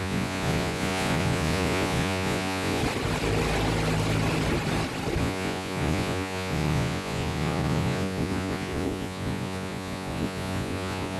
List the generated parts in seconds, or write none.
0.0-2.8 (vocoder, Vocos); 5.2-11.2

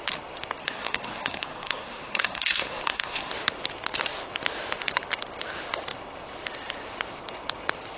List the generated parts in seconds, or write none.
0.6-3.3 (codec, SNAC)

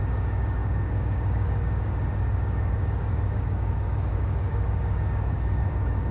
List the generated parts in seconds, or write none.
0.0-6.1 (codec, DAC)

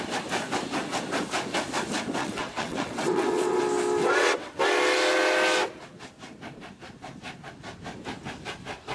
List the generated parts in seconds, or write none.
2.2-3.6 (vocoder, WaveNeXt); 4.0-4.6

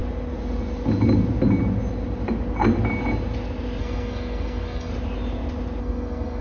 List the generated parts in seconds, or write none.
3.8-4.9 (codec, SNAC); 5.8-6.4

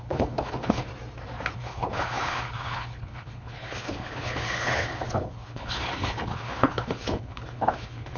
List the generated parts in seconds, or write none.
0.0-0.9 (codec, HILCodec); 1.5-8.2

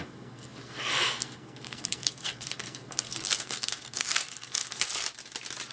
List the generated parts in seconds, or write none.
0.0-4.9 (codec, SNAC)